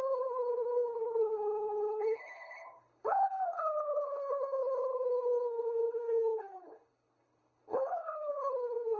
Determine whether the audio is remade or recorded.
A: remade